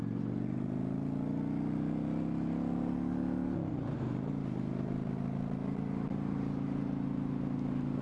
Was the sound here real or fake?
real